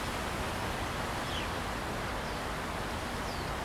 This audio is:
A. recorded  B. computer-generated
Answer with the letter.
A